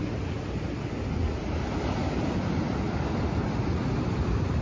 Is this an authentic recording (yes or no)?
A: yes